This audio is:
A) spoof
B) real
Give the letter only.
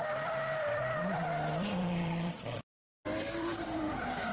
A